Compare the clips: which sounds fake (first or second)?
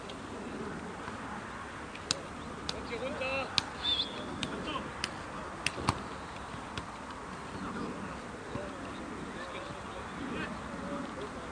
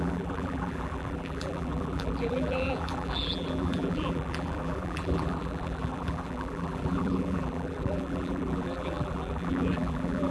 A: second